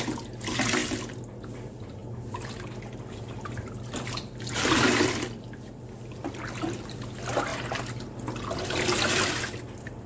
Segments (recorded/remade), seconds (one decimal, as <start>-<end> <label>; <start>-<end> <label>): 0.0-10.1 recorded